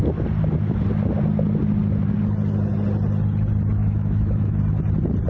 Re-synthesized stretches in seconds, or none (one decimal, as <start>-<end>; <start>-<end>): 3.8-4.6